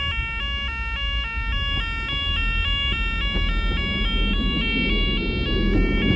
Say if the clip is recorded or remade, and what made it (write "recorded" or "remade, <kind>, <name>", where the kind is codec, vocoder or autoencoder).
recorded